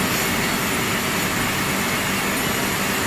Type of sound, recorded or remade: recorded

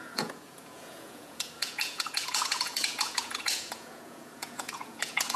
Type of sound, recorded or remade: remade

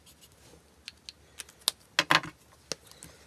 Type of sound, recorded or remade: recorded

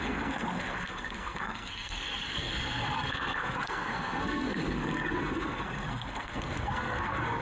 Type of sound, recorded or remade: remade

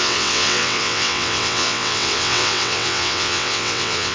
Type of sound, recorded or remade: remade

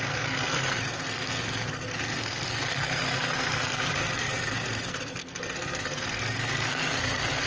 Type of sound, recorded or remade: remade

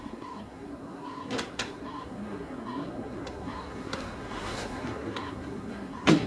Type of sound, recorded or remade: remade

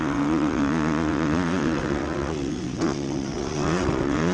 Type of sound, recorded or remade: remade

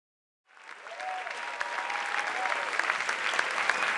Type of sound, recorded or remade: recorded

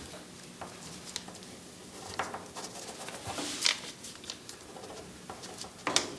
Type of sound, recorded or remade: recorded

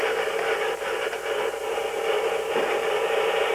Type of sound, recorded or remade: recorded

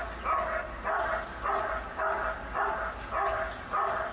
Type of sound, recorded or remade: recorded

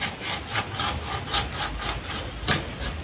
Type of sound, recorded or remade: recorded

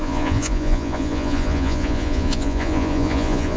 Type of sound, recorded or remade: remade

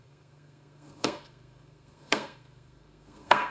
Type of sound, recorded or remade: remade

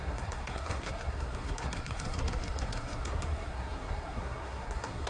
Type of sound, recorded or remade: remade